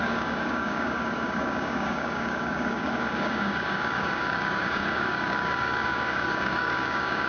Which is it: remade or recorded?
remade